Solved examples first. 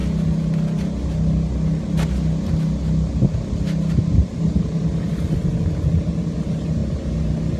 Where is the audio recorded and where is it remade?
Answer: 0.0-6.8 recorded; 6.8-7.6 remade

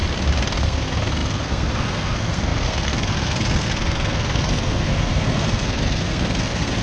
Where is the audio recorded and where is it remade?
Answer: 0.0-0.6 recorded; 0.6-6.8 remade

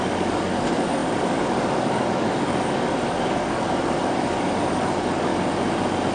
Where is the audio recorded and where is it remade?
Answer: 0.0-5.3 remade; 5.3-6.1 recorded

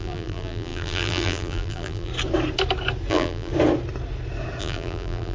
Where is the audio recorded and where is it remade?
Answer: 0.0-2.1 remade; 2.1-3.1 recorded; 3.1-3.5 remade; 3.5-4.6 recorded; 4.6-5.3 remade